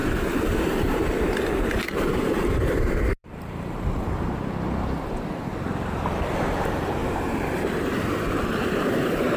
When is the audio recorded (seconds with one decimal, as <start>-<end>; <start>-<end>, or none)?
5.5-6.3